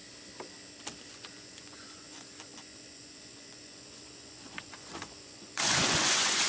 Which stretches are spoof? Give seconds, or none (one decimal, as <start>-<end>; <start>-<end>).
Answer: 1.1-6.5